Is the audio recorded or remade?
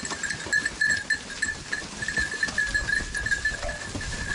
recorded